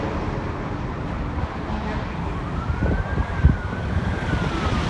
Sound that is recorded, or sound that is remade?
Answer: recorded